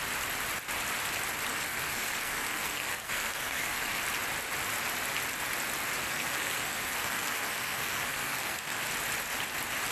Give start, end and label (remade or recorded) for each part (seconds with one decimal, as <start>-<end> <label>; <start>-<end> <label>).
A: 0.0-1.5 recorded; 1.5-4.0 remade; 4.0-6.0 recorded; 6.0-8.8 remade; 8.8-9.9 recorded